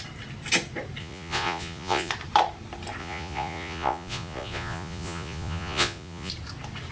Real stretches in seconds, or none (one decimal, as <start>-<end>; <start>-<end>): 0.0-1.0; 2.1-3.0; 6.3-6.9